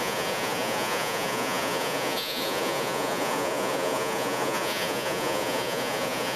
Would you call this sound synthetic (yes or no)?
yes